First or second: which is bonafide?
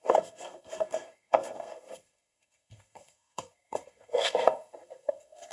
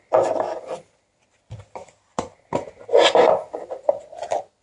second